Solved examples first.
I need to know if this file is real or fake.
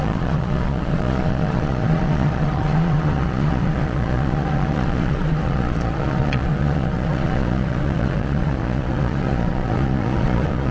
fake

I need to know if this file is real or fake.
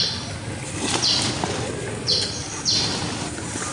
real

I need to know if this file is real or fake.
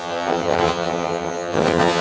fake